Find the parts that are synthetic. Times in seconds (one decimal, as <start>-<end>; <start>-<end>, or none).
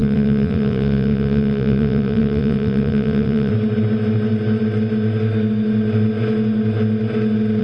0.0-3.5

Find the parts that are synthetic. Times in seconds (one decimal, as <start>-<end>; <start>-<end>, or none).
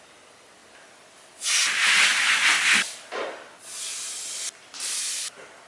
none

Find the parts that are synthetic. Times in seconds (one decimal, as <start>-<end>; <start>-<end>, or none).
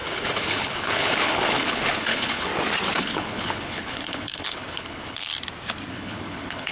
0.0-2.5; 3.0-5.3; 5.9-6.7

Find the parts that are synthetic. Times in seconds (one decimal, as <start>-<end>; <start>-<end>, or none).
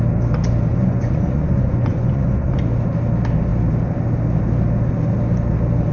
0.7-2.6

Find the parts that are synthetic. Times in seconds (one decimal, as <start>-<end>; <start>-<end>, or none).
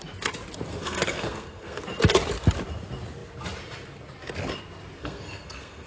0.7-1.8; 5.0-5.9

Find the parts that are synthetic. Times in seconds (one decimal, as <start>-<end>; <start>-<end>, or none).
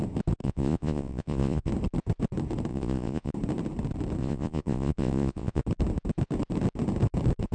0.4-1.7; 2.7-3.3; 4.2-5.6